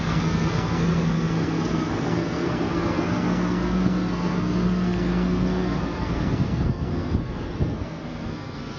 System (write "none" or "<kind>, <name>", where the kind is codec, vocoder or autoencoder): codec, SNAC